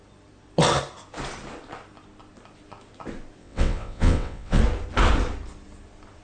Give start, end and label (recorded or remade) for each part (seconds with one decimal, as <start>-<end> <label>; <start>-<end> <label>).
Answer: 0.0-3.4 recorded; 3.4-4.6 remade; 4.6-6.2 recorded